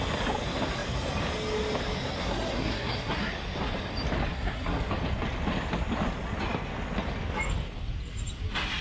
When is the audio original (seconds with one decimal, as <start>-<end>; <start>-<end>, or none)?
0.0-2.2; 3.3-4.3; 4.9-8.8